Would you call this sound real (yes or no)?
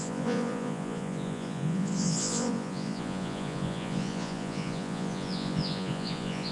no